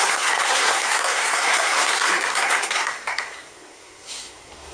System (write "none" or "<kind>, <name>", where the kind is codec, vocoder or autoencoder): codec, SNAC